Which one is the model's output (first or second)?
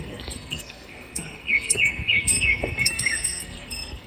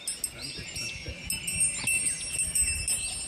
first